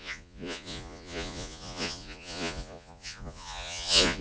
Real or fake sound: fake